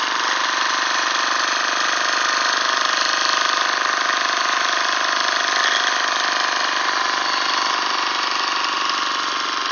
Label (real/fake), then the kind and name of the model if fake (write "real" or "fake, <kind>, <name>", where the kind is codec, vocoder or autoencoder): real